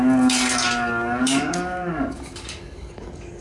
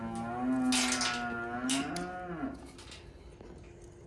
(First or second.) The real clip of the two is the second